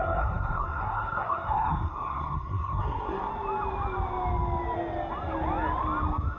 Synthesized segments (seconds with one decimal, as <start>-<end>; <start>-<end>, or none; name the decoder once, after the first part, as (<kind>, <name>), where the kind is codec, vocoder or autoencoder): 0.0-3.3 (codec, SNAC)

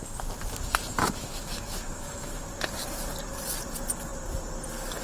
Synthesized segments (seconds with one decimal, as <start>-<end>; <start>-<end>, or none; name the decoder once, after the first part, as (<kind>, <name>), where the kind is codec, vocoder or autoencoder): 1.0-2.5 (autoencoder, DAC-VAE)

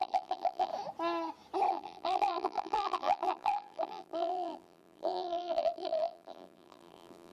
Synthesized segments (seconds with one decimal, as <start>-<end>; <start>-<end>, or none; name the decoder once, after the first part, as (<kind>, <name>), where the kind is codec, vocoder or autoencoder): 0.0-0.7 (vocoder, BigVGAN v2); 1.7-7.3

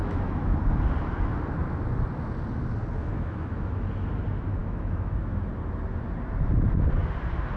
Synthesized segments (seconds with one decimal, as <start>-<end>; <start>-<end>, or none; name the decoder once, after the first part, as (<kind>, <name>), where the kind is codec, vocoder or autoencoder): 0.0-0.6 (autoencoder, DAC-VAE); 3.0-3.9; 4.6-5.5

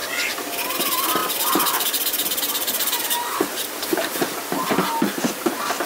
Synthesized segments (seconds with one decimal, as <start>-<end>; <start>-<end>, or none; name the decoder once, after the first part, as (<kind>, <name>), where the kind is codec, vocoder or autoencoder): 0.0-0.6 (vocoder, BigVGAN v2); 1.2-4.7

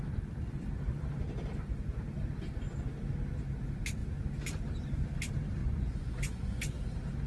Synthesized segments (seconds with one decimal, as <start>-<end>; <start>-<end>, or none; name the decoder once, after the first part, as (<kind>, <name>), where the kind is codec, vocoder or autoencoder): 5.6-6.6 (vocoder, Vocos)

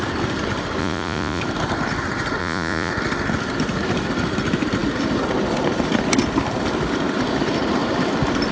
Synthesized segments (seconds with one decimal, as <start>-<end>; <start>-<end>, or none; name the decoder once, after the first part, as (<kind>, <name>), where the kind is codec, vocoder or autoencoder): 0.8-1.4 (vocoder, Vocos); 2.4-2.9

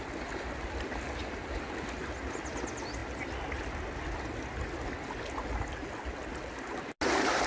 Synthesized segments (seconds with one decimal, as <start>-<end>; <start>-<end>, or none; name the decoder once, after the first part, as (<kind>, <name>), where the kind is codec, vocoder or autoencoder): none